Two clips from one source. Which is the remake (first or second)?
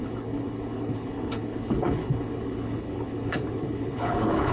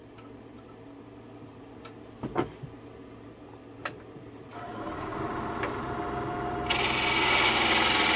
first